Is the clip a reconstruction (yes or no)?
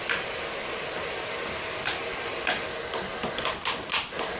no